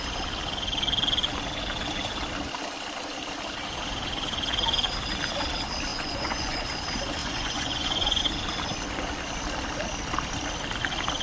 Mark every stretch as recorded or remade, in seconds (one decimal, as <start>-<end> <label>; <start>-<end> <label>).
0.0-5.9 recorded; 5.9-6.6 remade; 6.6-7.2 recorded; 7.2-8.2 remade; 8.2-11.2 recorded